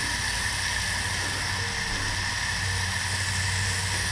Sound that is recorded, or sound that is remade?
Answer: recorded